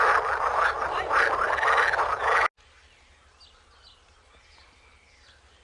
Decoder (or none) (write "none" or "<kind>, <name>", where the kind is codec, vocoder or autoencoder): none